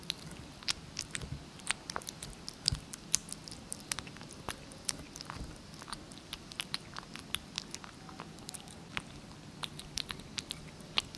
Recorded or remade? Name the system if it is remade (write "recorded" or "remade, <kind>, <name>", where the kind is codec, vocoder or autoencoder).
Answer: recorded